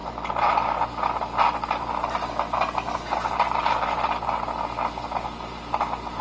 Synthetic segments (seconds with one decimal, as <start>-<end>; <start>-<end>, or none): none